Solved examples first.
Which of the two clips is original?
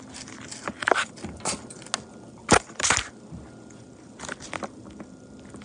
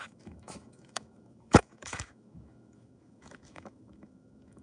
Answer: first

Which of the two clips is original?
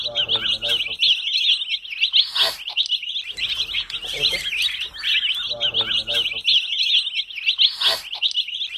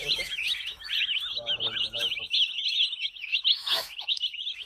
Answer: first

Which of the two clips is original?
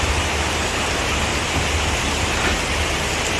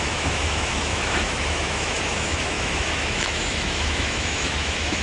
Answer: first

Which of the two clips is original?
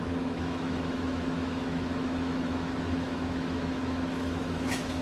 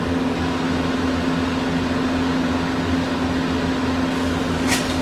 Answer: second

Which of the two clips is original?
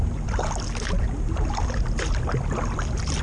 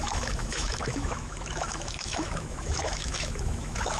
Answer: first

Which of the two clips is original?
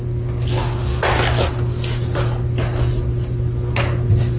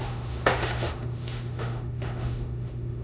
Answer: first